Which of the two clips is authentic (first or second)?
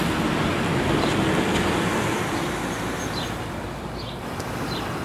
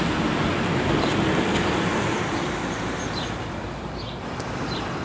first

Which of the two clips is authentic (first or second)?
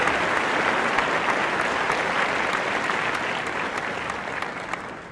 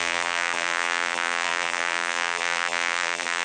first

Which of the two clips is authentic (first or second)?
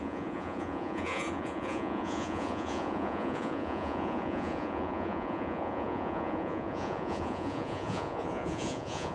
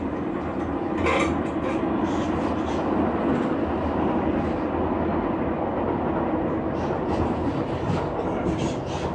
second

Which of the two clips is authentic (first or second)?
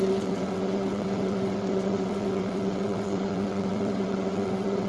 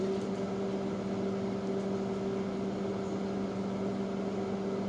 second